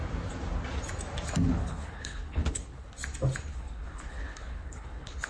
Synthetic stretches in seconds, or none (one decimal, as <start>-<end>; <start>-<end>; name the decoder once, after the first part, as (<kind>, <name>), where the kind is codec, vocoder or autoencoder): 1.6-2.9 (codec, HILCodec); 3.5-5.3